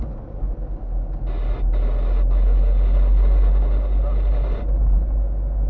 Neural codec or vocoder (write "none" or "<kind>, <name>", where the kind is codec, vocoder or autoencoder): none